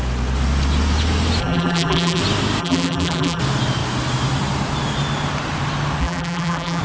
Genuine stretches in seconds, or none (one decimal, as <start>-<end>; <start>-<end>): 0.0-1.4; 2.2-2.6; 3.4-6.0